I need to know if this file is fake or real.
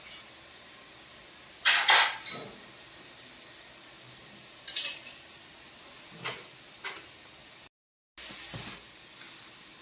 real